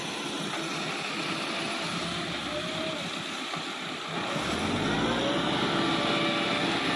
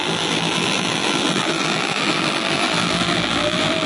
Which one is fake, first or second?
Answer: second